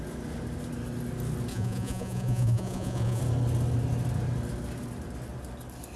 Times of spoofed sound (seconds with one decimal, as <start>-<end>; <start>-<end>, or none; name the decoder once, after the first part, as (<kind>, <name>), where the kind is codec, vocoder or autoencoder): 1.5-3.2 (vocoder, Vocos)